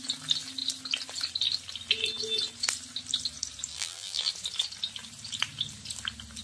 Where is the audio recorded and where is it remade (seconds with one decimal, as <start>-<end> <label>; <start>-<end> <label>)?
0.0-3.7 recorded; 3.7-4.3 remade; 4.3-6.4 recorded